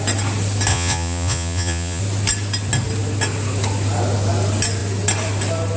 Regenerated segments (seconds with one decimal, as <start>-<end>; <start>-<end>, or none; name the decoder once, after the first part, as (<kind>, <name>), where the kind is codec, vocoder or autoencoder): 0.7-2.0 (vocoder, Vocos)